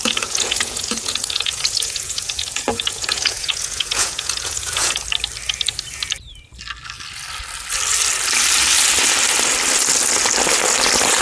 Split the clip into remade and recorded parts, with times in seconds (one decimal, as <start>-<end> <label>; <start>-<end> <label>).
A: 0.0-5.0 remade; 5.0-11.2 recorded

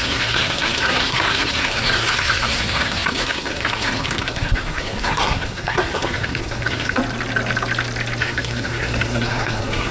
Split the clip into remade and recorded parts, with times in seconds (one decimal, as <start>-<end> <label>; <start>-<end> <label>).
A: 0.0-7.0 remade; 7.0-8.2 recorded; 8.2-9.9 remade

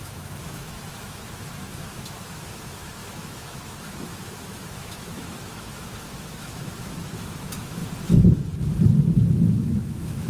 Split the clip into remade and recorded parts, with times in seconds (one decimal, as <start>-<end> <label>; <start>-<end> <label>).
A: 0.0-7.8 remade; 7.8-9.3 recorded; 9.3-10.3 remade

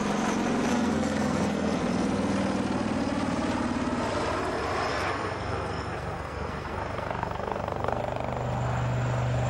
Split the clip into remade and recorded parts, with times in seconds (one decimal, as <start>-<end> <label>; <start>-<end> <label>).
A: 0.0-0.7 recorded; 0.7-1.8 remade; 1.8-4.9 recorded; 4.9-8.0 remade; 8.0-9.5 recorded

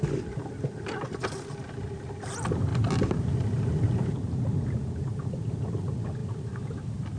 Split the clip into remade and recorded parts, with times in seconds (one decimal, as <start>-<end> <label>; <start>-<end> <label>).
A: 0.0-7.2 recorded